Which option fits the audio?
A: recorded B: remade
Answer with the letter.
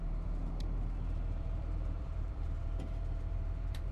B